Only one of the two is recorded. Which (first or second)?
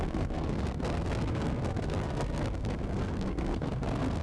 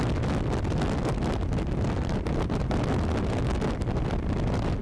second